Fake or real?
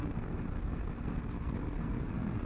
fake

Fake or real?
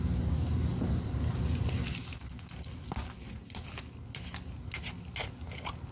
real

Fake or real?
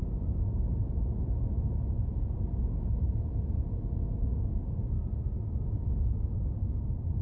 real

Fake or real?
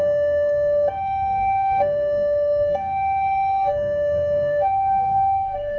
fake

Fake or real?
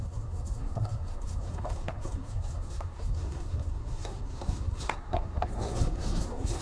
fake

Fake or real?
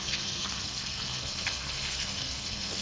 fake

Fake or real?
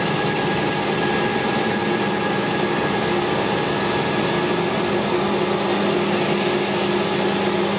real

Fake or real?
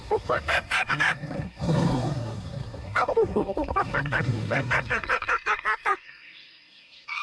fake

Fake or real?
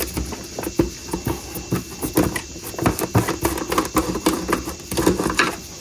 real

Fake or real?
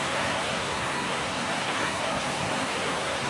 fake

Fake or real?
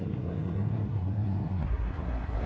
fake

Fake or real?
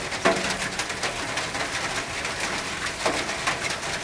real